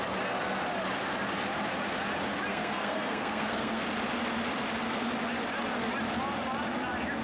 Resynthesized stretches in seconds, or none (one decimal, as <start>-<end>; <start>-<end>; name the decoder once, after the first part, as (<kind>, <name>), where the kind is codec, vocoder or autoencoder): 2.5-3.8 (codec, SNAC)